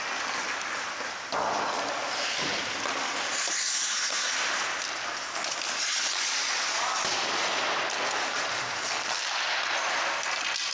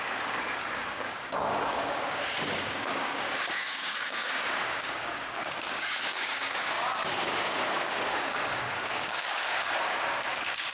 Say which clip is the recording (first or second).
first